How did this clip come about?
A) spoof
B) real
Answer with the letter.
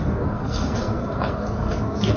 A